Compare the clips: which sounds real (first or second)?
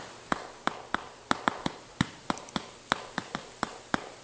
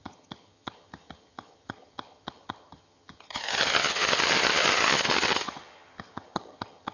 first